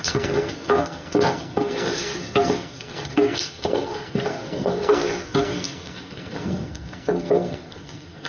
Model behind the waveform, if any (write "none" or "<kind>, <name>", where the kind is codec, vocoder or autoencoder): codec, SNAC